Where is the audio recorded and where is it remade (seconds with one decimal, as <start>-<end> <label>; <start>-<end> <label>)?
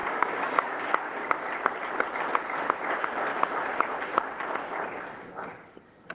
0.0-1.7 remade; 1.7-6.1 recorded